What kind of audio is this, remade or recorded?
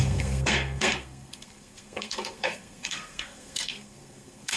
remade